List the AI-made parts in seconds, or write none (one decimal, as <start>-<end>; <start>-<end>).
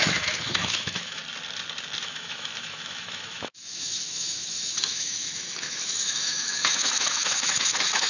0.0-1.2; 2.0-8.1